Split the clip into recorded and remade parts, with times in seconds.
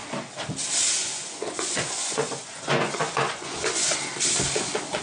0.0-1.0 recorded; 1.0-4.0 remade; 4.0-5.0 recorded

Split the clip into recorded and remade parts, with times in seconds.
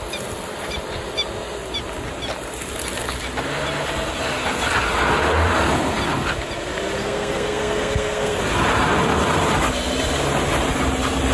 0.0-7.0 recorded; 7.0-8.4 remade; 8.4-11.3 recorded